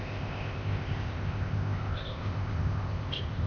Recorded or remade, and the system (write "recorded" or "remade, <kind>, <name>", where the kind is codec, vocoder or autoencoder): remade, codec, ZipCodec